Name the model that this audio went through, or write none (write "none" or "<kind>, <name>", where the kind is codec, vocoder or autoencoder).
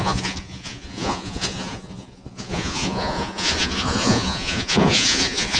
vocoder, Vocos